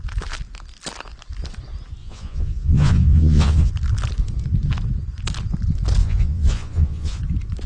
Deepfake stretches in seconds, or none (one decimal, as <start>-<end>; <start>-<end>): 2.0-3.7; 6.0-7.2